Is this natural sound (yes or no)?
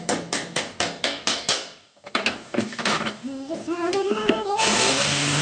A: no